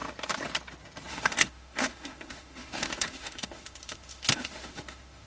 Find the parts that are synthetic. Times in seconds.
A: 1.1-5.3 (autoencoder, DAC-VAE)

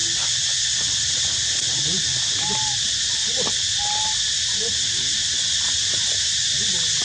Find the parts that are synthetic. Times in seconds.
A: none

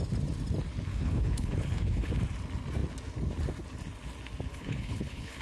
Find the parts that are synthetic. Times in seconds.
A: 0.9-2.1 (codec, HILCodec); 4.5-5.4

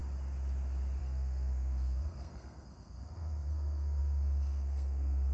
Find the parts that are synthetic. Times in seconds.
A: 1.0-5.3 (codec, SNAC)